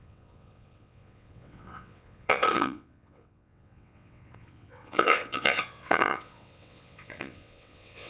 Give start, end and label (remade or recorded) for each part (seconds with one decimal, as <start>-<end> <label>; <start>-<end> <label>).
0.0-8.1 remade